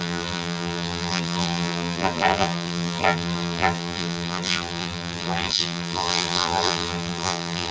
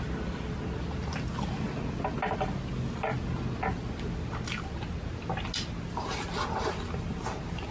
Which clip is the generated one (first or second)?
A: first